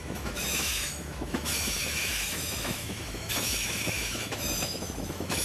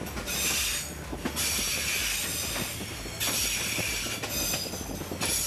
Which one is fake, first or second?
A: first